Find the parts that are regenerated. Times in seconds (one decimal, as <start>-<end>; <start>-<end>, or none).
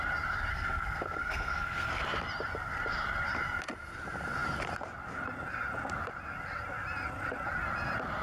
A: 0.5-1.9